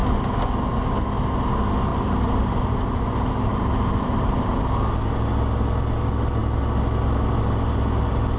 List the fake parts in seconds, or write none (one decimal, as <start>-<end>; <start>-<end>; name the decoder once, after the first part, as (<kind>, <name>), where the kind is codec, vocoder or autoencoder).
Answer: 1.9-3.0 (vocoder, BigVGAN v2); 3.5-4.6